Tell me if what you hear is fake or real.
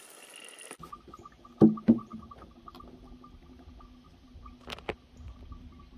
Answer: real